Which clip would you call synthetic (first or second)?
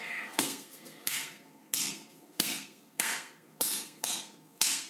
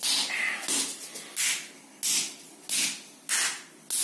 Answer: first